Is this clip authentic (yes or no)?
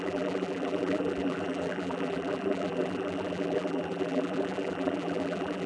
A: no